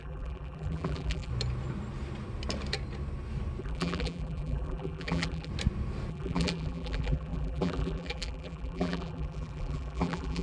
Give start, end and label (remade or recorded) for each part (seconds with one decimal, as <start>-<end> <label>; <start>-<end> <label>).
0.0-1.3 remade; 1.3-3.6 recorded; 3.6-5.5 remade; 5.5-6.1 recorded; 6.1-10.4 remade